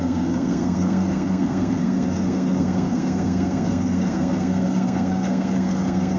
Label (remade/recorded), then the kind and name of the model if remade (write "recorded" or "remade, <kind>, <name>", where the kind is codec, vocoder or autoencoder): remade, codec, SNAC